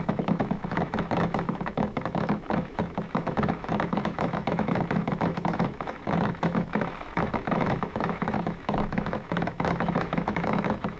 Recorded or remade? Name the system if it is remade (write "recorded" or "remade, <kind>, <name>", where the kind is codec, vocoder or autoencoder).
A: remade, autoencoder, DAC-VAE